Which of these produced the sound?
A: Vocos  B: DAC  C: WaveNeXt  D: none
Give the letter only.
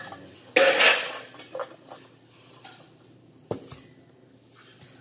D